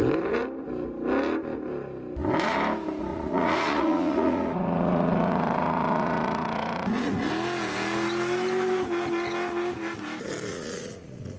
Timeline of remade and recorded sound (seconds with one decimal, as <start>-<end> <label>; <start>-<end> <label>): 0.0-3.1 recorded; 3.1-7.3 remade; 7.3-10.5 recorded; 10.5-11.4 remade